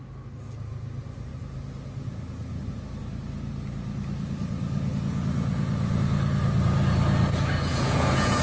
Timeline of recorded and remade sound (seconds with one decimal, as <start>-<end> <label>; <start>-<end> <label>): 0.0-7.7 recorded; 7.7-8.4 remade

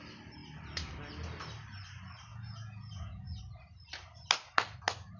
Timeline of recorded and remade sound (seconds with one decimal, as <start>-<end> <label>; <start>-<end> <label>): 0.0-2.3 recorded; 2.3-3.4 remade; 3.4-5.2 recorded

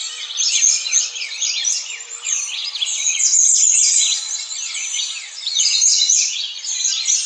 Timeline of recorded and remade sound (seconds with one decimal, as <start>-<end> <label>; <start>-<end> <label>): 0.0-7.3 remade

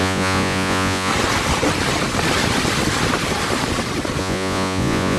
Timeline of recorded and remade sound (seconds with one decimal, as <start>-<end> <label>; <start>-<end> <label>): 0.0-1.1 remade; 1.1-4.2 recorded; 4.2-5.2 remade